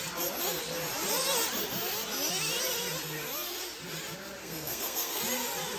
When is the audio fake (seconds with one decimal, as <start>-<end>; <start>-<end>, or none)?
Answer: 4.4-5.2

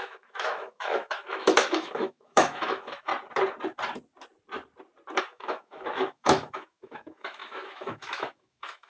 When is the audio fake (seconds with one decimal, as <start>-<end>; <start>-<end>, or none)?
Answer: 0.0-3.1; 5.2-8.9

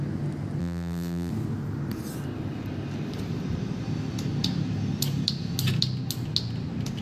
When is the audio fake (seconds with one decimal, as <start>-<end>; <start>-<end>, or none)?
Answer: 0.6-1.3

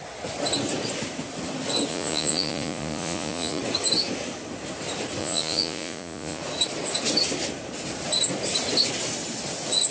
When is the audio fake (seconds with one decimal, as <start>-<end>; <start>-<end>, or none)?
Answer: 1.9-3.6; 5.2-6.4

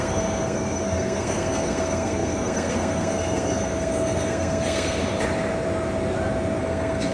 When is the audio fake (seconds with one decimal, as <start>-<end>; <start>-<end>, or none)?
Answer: 0.0-5.0; 6.6-7.1

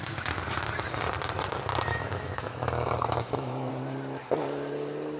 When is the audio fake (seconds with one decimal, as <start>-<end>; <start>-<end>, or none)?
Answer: 1.9-3.7

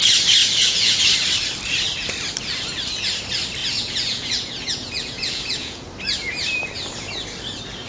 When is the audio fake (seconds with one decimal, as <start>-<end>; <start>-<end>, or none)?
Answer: 0.4-1.0; 3.6-5.9

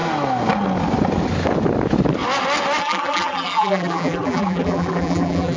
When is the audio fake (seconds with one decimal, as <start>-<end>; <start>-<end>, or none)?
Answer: 2.8-5.6